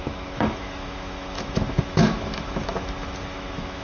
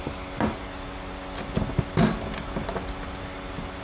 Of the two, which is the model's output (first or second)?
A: first